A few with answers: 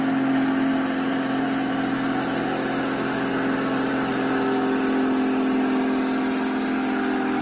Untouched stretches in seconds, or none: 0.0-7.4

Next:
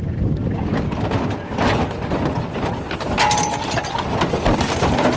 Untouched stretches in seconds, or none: 0.0-5.2

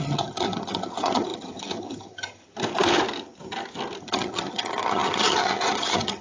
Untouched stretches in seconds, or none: 2.4-4.0

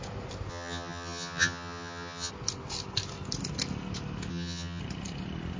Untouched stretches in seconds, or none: 0.0-0.5; 2.3-4.3; 4.8-5.6

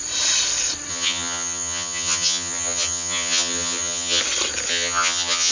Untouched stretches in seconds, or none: 0.0-0.9; 4.2-4.7

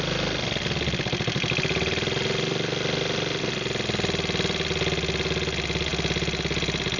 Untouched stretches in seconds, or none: 0.0-7.0

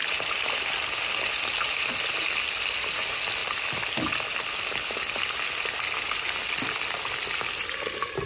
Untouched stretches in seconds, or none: 0.0-8.3